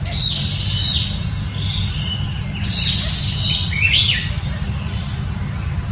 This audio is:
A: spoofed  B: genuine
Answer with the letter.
B